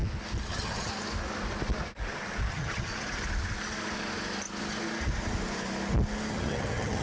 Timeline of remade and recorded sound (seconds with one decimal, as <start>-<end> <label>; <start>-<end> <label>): 0.0-0.5 recorded; 0.5-0.9 remade; 0.9-2.5 recorded; 2.5-2.9 remade; 2.9-6.3 recorded; 6.3-7.0 remade